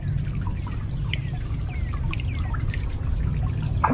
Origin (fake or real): real